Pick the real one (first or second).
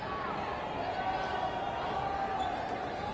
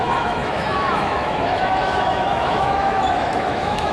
first